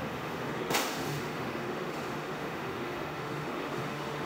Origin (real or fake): fake